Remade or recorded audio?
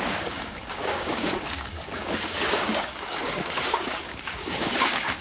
remade